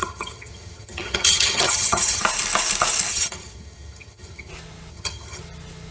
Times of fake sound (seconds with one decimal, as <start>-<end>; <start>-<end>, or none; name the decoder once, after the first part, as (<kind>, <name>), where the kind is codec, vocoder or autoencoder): 0.0-2.2 (vocoder, HiFi-GAN); 3.1-4.5; 4.9-5.4